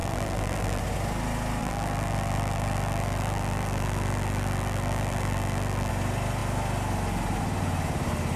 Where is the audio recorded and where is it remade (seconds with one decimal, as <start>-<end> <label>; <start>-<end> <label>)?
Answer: 0.0-0.8 remade; 0.8-1.6 recorded; 1.6-5.9 remade; 5.9-8.4 recorded